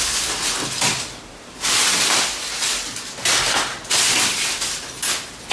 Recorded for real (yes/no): no